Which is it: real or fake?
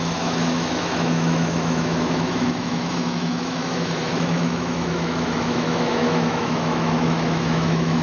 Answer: fake